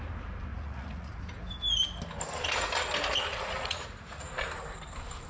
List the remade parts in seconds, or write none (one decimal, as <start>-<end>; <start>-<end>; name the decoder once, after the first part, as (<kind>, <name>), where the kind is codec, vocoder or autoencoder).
0.5-1.2 (vocoder, Vocos); 3.3-4.3